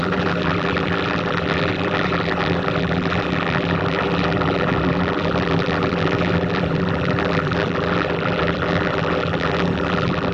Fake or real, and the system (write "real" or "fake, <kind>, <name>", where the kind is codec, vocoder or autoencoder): fake, vocoder, BigVGAN v2